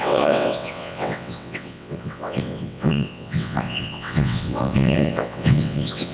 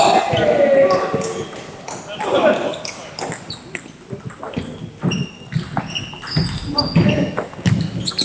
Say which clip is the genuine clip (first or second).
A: second